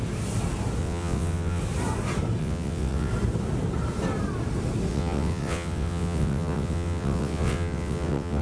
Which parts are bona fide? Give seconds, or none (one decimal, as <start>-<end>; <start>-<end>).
0.0-0.8; 1.6-2.4; 3.1-4.9